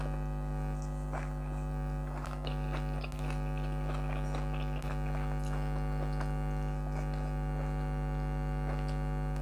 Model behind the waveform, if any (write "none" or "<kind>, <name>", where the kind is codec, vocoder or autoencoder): none